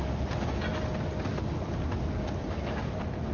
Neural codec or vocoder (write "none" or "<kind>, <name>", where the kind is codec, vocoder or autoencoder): none